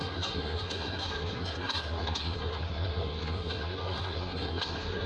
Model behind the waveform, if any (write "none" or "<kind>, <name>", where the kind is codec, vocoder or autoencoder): codec, SNAC